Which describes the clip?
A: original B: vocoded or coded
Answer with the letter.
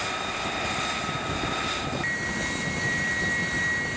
A